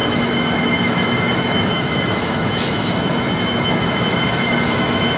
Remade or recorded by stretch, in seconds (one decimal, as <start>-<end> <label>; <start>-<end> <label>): 0.0-5.2 remade